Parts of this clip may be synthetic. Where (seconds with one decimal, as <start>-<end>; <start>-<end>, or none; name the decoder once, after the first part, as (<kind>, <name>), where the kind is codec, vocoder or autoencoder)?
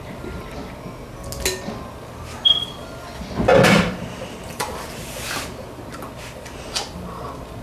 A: none